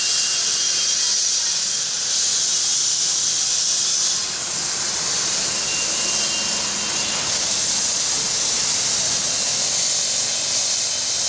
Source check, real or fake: real